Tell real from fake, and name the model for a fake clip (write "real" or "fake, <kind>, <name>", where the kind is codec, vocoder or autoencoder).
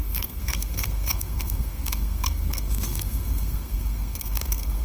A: fake, codec, SNAC